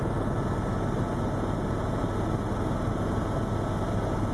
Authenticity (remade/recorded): recorded